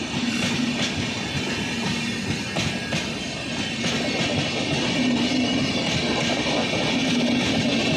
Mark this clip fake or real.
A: real